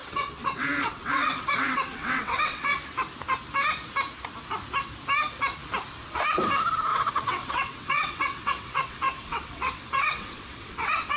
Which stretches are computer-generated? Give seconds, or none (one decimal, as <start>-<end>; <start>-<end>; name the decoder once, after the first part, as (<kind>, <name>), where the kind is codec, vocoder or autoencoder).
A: 0.0-2.8 (vocoder, WaveNeXt); 6.9-11.2